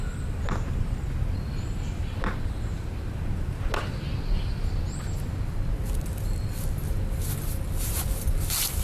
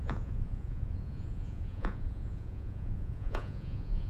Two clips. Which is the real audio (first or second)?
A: first